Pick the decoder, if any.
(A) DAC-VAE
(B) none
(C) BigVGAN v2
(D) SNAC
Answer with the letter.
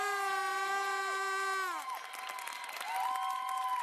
B